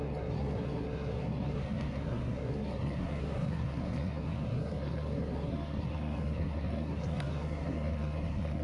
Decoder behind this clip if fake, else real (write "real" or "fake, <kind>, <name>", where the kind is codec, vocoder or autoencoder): fake, codec, SNAC